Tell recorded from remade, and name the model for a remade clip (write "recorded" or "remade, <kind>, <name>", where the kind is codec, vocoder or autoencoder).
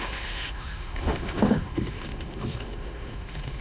remade, autoencoder, DAC-VAE